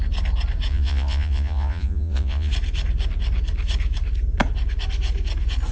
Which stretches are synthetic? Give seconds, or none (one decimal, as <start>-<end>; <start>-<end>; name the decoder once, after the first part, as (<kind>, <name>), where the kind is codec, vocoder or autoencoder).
0.7-2.5 (vocoder, Vocos)

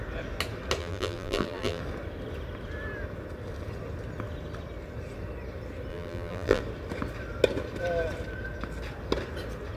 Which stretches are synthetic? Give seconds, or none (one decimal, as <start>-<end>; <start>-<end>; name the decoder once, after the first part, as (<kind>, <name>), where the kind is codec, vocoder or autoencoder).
0.8-1.8 (vocoder, BigVGAN v2); 5.9-6.6

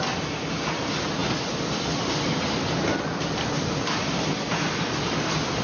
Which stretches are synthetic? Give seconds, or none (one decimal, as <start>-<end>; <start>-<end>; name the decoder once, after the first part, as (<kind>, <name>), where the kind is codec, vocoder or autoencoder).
none

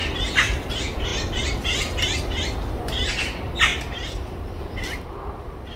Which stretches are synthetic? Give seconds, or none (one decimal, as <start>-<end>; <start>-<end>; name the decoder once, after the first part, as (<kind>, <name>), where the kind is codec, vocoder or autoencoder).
3.7-4.6 (vocoder, BigVGAN v2)

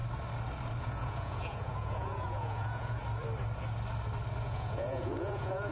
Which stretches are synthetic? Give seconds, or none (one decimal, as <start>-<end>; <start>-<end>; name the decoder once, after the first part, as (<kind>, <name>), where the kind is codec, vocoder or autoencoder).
0.8-3.0 (vocoder, Vocos); 4.4-5.7

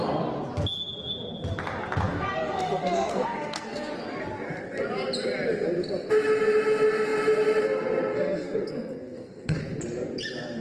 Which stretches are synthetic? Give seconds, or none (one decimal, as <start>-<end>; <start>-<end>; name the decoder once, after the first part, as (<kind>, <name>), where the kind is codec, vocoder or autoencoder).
2.1-3.9 (codec, SNAC); 8.1-9.6

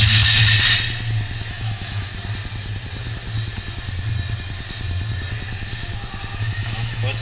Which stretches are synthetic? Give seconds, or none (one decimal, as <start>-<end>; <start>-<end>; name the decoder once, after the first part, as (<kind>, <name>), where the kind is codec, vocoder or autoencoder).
0.0-0.4 (autoencoder, DAC-VAE); 1.5-2.1; 6.4-7.2

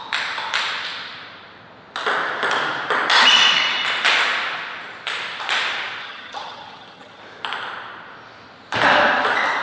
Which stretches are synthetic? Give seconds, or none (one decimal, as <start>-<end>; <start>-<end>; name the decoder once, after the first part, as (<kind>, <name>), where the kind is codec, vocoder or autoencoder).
6.0-7.2 (vocoder, HiFi-GAN)